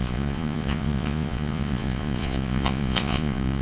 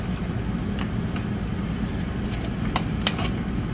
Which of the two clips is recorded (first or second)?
second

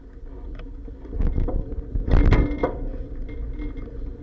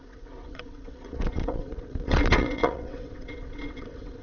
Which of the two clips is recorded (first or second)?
first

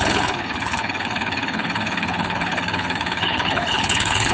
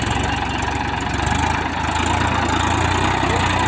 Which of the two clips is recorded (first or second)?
second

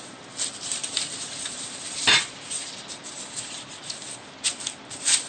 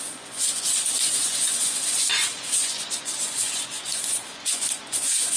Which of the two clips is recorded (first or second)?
first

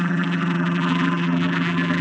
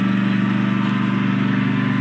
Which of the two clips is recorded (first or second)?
second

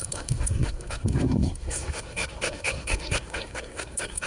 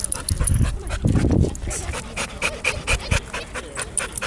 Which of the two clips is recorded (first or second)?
second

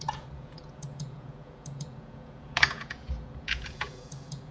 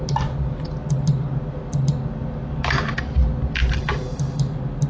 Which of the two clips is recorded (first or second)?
second